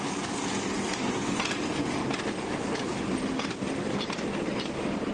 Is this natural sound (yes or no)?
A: yes